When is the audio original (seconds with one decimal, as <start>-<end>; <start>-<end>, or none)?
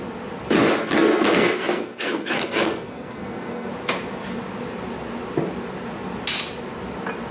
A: 0.0-0.8; 3.7-7.3